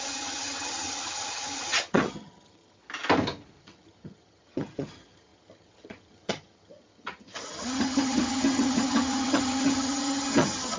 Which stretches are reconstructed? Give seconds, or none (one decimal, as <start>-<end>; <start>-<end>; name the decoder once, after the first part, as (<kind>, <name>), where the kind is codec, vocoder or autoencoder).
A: 0.0-2.8 (vocoder, HiFi-GAN); 3.6-10.8